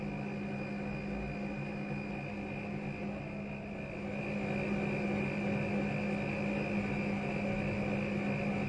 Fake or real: real